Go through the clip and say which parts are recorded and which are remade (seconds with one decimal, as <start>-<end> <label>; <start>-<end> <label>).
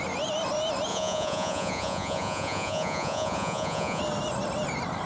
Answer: 0.0-0.9 recorded; 0.9-4.0 remade; 4.0-5.1 recorded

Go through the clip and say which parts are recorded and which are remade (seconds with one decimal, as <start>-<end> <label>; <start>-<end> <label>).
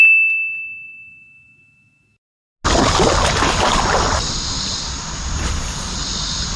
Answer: 0.0-6.6 recorded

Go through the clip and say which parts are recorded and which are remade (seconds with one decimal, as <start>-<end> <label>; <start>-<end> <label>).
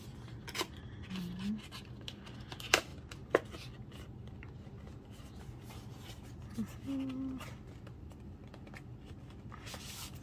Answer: 0.0-10.2 recorded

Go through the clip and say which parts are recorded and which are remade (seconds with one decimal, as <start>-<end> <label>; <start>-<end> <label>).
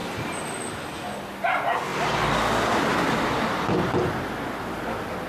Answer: 0.0-5.3 recorded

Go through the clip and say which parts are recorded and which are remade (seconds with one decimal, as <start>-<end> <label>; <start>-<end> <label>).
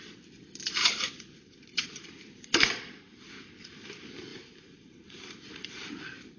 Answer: 0.0-0.8 recorded; 0.8-3.3 remade; 3.3-4.3 recorded; 4.3-6.0 remade; 6.0-6.4 recorded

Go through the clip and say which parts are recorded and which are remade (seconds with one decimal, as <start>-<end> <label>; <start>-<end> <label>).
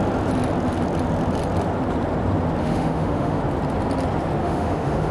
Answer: 0.0-2.6 recorded; 2.6-3.4 remade; 3.4-4.4 recorded; 4.4-5.1 remade